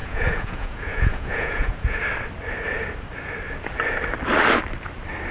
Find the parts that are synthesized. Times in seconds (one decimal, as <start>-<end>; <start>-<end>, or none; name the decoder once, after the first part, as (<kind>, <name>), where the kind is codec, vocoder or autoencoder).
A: 0.0-2.0 (vocoder, Vocos)